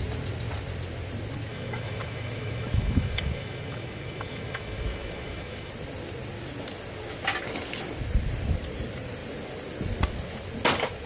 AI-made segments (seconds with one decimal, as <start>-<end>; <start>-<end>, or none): 1.5-5.7